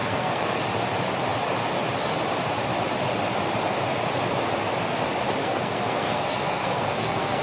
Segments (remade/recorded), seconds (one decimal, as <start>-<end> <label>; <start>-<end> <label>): 0.0-0.6 remade; 0.6-5.4 recorded; 5.4-7.4 remade